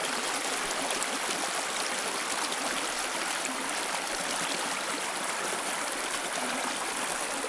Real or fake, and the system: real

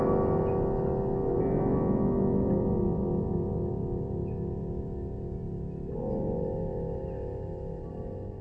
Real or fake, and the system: real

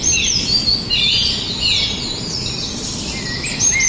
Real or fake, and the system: real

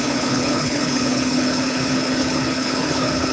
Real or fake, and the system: fake, codec, HILCodec